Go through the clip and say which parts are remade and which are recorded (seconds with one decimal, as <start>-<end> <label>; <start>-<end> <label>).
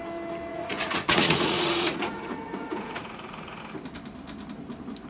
0.0-0.5 recorded; 0.5-3.6 remade; 3.6-5.1 recorded